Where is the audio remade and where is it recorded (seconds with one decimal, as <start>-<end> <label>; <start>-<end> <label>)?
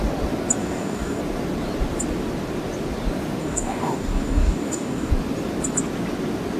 0.0-0.6 recorded; 0.6-1.2 remade; 1.2-3.4 recorded; 3.4-5.1 remade; 5.1-6.6 recorded